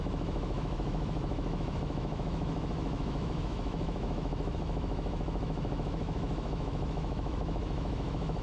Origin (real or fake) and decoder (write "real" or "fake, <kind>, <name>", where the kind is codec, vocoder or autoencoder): fake, autoencoder, DAC-VAE